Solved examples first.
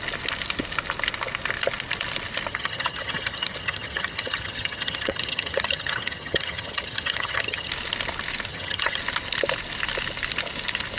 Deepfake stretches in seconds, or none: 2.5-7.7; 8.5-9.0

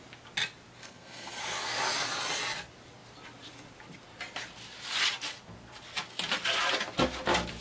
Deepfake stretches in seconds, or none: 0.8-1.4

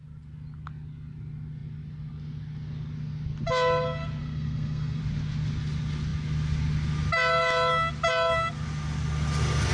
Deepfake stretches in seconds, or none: 4.2-5.0

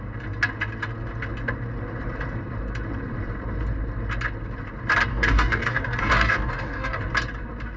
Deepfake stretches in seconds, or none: 5.1-7.0

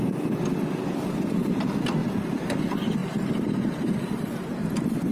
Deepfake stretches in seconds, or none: 2.0-2.5; 3.0-4.5

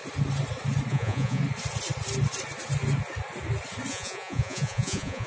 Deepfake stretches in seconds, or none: 0.9-1.4; 3.9-5.3